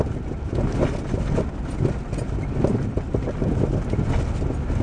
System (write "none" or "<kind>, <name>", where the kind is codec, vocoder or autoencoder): none